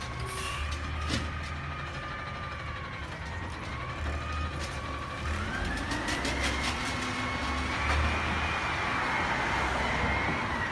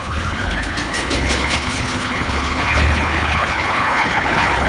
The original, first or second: first